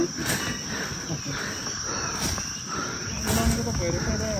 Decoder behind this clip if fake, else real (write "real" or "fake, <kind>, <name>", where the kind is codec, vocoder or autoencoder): real